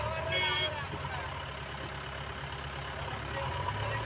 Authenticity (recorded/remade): recorded